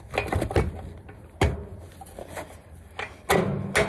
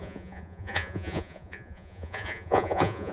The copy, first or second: second